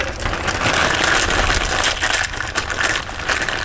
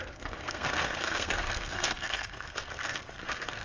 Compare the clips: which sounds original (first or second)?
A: first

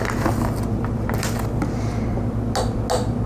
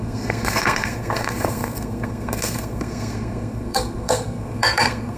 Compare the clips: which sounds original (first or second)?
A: first